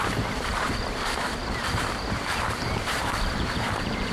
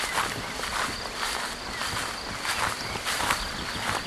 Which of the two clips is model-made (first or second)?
first